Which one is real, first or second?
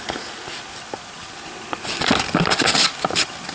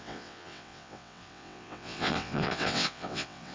first